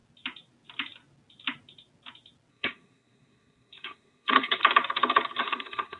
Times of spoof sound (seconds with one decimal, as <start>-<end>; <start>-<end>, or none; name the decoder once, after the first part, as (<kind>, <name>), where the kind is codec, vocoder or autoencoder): 2.5-4.6 (codec, SNAC); 5.4-6.0